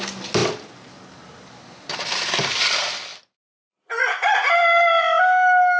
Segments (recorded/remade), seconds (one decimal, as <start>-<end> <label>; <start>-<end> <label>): 0.0-5.8 recorded